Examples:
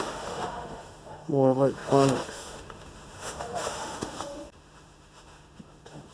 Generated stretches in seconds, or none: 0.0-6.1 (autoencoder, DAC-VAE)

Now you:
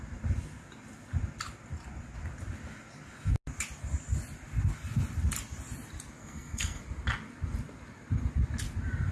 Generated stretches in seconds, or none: 6.2-6.8 (codec, SNAC)

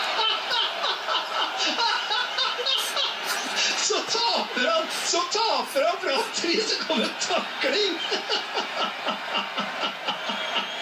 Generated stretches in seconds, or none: 3.8-4.9 (vocoder, Vocos)

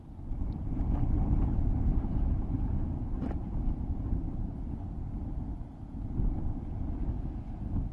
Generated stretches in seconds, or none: 1.9-4.6 (vocoder, BigVGAN v2)